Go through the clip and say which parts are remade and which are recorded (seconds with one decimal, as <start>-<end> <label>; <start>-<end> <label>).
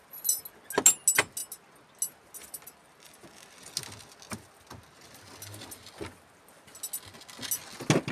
0.0-8.1 recorded